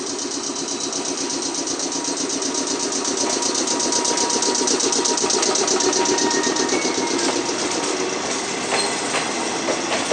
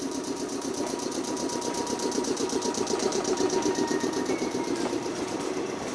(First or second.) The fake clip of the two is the second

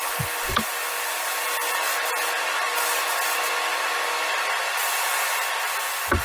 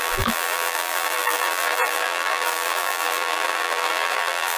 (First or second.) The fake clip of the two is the second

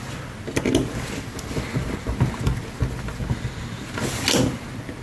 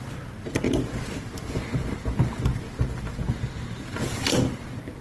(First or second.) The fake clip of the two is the second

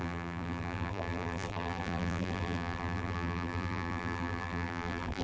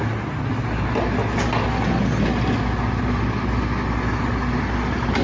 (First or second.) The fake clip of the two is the first